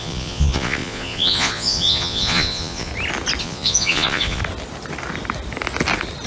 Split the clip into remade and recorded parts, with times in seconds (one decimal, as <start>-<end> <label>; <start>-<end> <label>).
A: 0.0-2.9 remade; 2.9-3.4 recorded; 3.4-4.4 remade; 4.4-6.3 recorded